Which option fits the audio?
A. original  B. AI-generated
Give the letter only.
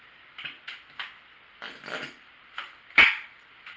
A